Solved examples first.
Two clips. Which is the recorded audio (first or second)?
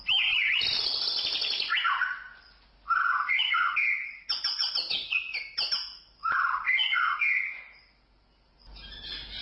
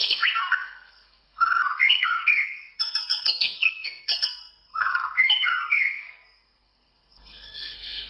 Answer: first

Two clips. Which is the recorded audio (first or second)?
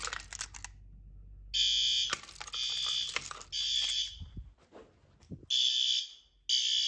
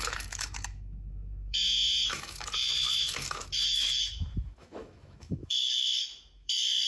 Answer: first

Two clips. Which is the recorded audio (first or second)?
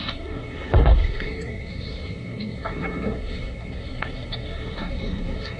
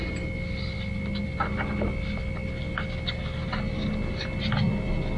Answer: second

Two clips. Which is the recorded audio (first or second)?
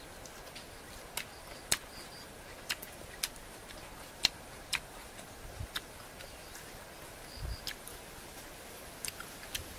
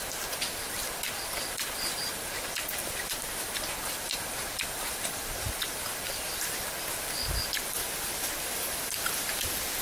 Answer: first